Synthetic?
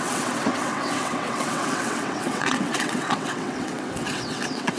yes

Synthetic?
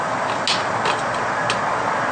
no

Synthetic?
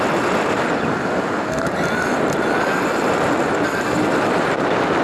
no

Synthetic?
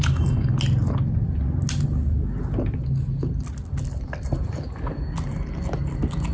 no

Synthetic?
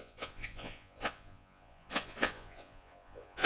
yes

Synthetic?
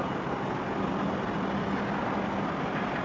no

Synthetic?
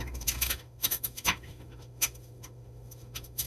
yes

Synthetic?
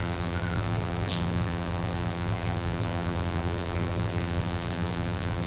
yes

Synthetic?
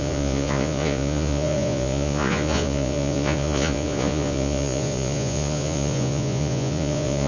yes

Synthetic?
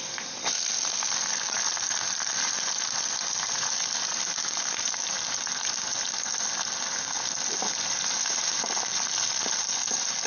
no